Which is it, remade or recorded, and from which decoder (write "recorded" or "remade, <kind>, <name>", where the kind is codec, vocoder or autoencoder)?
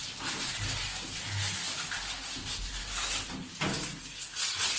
recorded